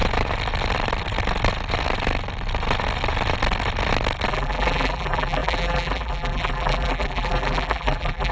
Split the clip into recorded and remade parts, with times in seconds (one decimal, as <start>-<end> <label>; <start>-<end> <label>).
0.0-4.3 recorded; 4.3-8.3 remade